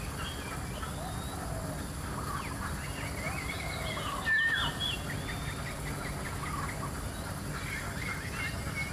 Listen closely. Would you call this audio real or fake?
real